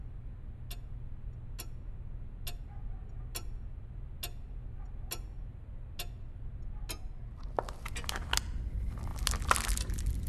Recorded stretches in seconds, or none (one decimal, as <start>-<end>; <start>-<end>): 0.0-10.3